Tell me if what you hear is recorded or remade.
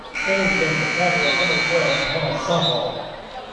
recorded